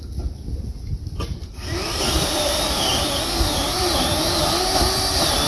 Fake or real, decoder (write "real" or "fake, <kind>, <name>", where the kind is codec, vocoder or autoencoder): real